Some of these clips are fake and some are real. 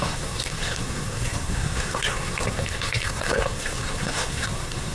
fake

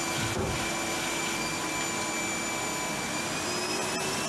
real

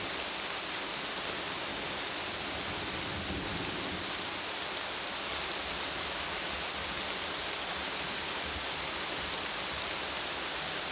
real